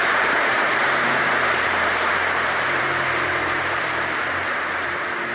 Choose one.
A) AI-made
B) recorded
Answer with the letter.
A